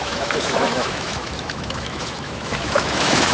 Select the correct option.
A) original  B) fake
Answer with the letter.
B